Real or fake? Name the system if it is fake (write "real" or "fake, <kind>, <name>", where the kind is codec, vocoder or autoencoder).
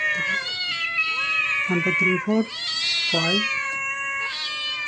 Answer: real